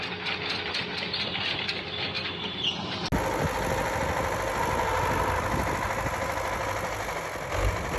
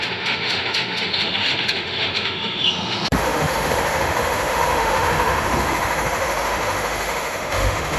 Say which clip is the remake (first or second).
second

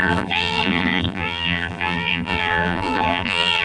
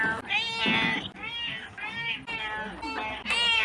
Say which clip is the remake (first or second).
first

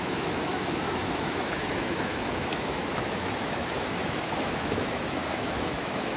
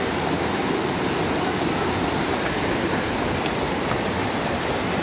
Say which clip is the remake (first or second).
first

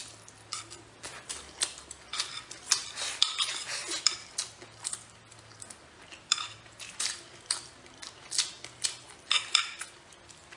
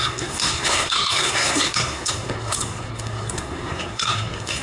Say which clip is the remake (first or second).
second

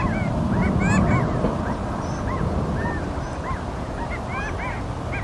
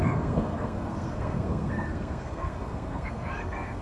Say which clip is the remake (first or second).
second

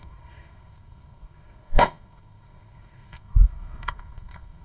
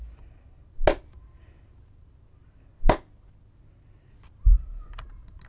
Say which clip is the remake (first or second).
first